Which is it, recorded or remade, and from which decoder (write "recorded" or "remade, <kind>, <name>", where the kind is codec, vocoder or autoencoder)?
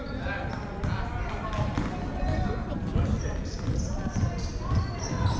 recorded